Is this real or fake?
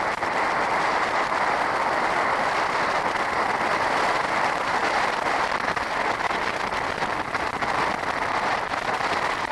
real